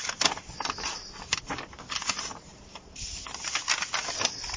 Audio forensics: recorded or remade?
remade